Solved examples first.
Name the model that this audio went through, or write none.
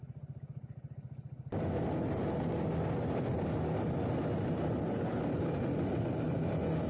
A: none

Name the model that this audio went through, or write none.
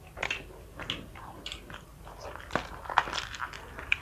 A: none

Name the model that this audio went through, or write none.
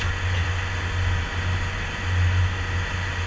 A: none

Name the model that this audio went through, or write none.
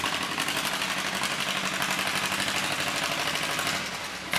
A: none